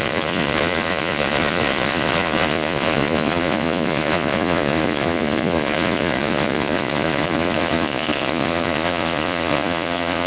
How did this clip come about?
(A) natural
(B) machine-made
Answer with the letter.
B